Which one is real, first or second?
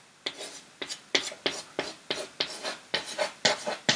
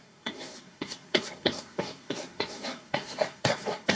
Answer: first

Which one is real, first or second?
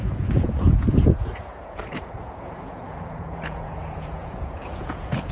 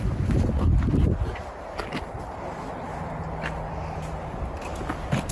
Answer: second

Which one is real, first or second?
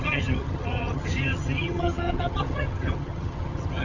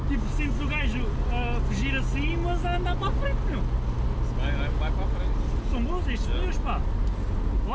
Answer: second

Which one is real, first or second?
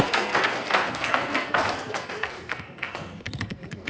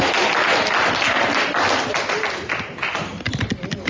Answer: second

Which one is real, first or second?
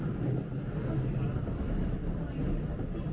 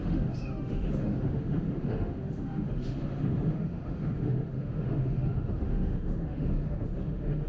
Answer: first